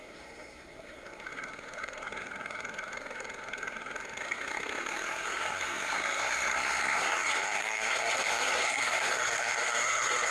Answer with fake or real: fake